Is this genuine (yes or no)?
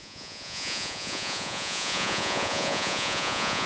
no